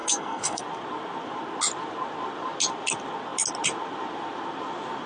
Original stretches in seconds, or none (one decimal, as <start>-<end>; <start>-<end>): 0.6-5.1